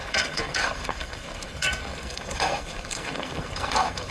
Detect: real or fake fake